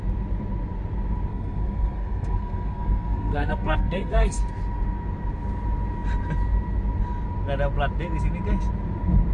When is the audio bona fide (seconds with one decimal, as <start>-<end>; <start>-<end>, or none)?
0.0-1.3; 4.4-9.3